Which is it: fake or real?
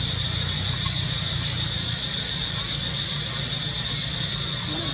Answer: real